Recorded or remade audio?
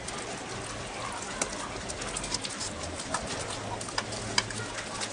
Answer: recorded